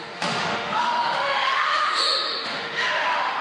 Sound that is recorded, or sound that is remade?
remade